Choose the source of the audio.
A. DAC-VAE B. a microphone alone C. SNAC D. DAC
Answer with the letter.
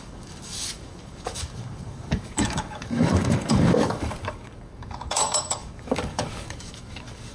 D